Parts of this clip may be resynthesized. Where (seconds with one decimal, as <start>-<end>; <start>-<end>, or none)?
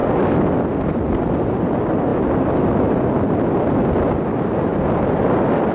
none